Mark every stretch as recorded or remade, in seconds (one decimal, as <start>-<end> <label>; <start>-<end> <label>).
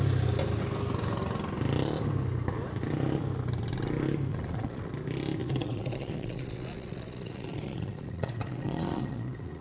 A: 0.0-4.3 recorded; 4.3-4.9 remade; 4.9-5.4 recorded; 5.4-9.6 remade